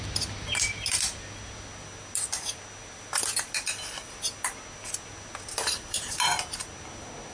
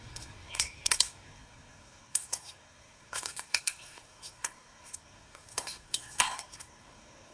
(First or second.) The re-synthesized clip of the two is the second